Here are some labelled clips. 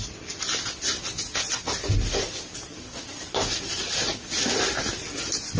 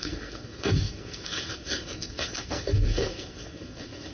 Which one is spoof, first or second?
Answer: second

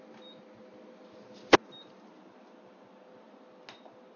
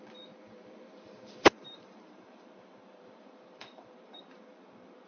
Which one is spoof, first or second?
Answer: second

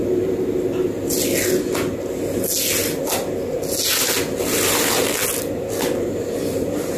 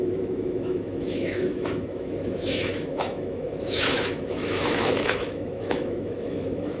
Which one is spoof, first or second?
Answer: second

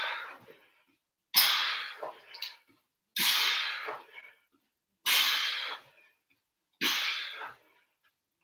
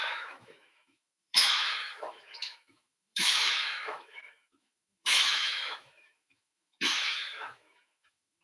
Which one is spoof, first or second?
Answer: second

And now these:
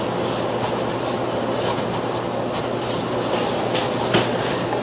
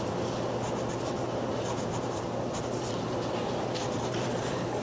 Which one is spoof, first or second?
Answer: second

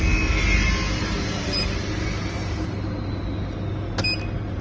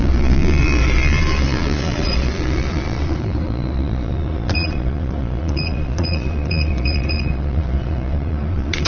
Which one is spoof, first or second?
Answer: second